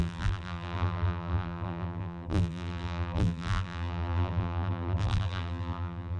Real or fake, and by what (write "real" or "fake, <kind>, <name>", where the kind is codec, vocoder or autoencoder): fake, vocoder, BigVGAN v2